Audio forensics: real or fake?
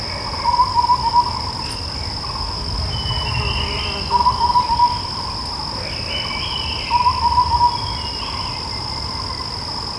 real